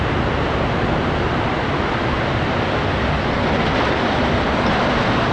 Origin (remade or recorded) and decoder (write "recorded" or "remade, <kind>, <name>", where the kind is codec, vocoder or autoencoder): recorded